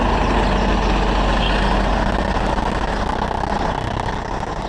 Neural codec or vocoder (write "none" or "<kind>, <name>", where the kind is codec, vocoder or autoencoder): none